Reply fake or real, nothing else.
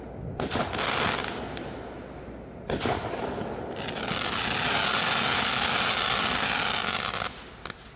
real